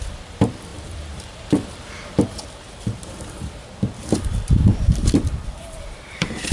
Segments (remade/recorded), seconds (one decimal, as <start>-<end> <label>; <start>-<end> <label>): 0.0-6.5 remade